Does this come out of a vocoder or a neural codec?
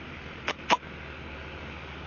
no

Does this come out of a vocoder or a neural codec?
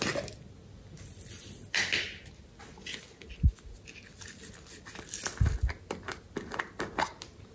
no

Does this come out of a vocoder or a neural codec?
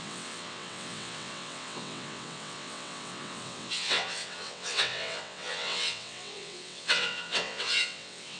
yes